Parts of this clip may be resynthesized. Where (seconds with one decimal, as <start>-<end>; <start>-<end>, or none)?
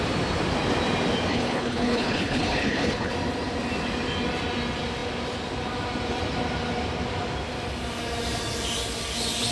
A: 1.3-3.1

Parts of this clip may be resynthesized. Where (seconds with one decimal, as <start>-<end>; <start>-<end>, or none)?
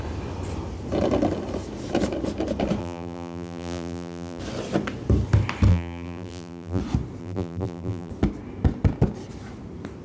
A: 2.8-4.4; 5.7-6.8; 7.2-8.1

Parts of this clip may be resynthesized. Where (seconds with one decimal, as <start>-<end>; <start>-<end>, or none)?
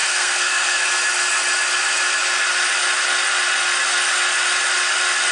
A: 0.0-0.9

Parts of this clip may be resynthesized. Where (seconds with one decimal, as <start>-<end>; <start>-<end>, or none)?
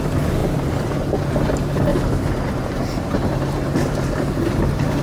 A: 0.4-0.9; 1.9-5.0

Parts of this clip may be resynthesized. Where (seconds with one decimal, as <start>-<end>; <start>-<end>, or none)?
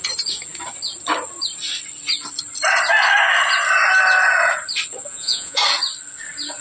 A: 5.1-5.6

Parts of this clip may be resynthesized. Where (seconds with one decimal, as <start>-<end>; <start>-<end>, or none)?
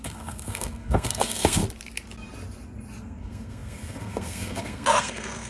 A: 0.0-1.6; 3.0-5.5